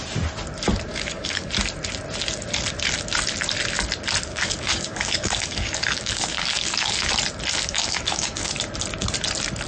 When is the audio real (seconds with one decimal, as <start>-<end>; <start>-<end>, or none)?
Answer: 0.0-0.9; 1.5-4.3; 7.1-7.5; 8.5-9.7